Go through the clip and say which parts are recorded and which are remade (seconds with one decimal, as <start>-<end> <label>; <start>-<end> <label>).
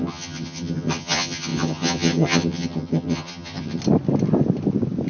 0.0-3.8 remade; 3.8-5.1 recorded